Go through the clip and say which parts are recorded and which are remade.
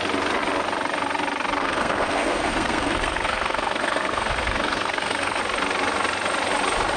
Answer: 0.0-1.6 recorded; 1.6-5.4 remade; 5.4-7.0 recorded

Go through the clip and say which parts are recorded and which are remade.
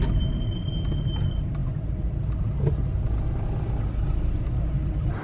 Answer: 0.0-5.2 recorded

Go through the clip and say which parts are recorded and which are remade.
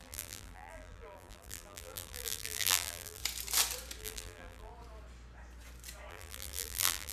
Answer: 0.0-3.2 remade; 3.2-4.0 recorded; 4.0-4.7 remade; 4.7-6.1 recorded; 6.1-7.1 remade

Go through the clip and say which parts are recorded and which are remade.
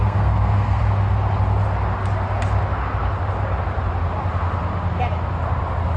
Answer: 0.0-0.8 remade; 0.8-6.0 recorded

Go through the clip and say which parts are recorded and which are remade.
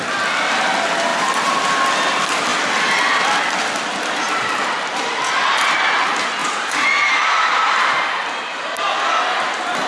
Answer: 0.0-1.1 recorded; 1.1-1.6 remade; 1.6-6.4 recorded; 6.4-8.9 remade; 8.9-9.9 recorded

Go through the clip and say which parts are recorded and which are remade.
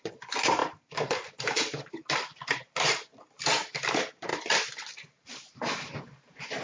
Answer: 0.0-0.6 recorded; 0.6-2.1 remade; 2.1-4.3 recorded; 4.3-5.2 remade; 5.2-6.6 recorded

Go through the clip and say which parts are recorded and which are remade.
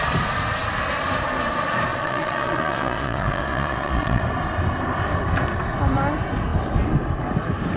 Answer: 0.0-1.9 recorded; 1.9-4.2 remade; 4.2-7.8 recorded